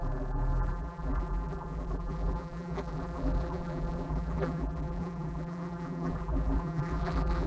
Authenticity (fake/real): fake